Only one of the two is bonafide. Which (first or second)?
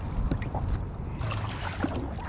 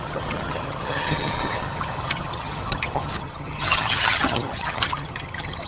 first